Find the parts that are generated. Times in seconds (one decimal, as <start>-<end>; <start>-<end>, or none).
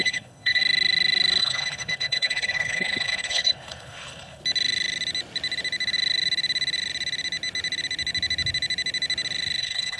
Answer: 0.0-0.6; 1.4-4.4; 9.6-10.0